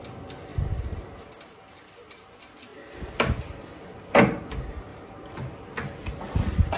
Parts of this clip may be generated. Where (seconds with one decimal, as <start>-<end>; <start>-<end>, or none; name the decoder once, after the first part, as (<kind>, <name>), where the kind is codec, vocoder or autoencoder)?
0.5-1.8 (vocoder, BigVGAN v2); 4.9-5.5